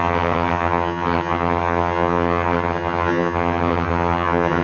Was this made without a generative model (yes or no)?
no